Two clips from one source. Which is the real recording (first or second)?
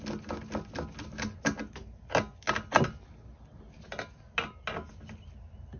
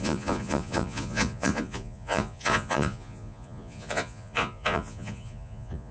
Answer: first